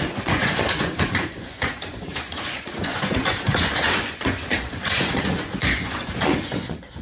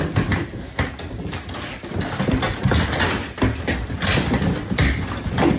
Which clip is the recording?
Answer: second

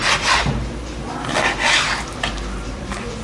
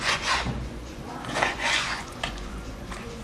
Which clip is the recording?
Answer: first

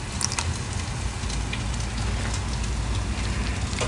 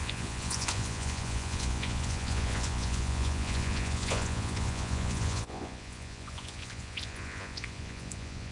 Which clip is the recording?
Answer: first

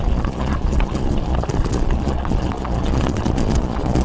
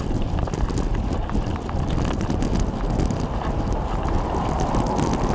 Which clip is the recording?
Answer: second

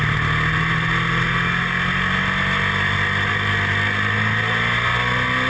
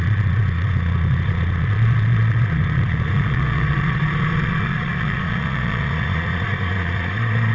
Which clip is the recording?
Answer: first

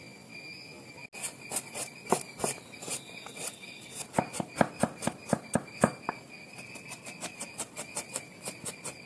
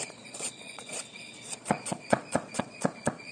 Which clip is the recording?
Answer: first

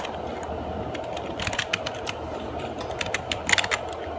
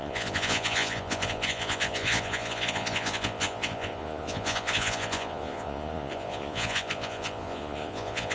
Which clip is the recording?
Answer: first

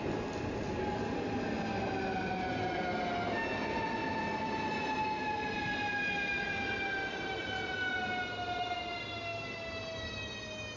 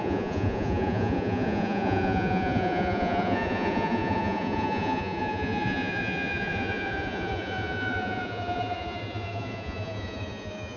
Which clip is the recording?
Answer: first